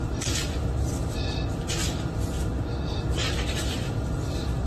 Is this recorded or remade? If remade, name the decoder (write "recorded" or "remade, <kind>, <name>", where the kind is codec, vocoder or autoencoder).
recorded